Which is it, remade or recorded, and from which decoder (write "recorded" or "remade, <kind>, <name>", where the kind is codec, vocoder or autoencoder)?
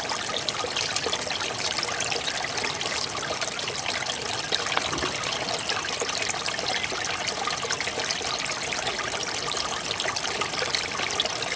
recorded